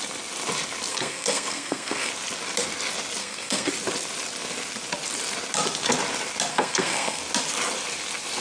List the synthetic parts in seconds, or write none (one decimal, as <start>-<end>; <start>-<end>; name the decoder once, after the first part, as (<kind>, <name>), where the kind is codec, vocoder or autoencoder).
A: 0.9-2.1 (codec, SNAC); 3.2-3.7; 6.5-7.2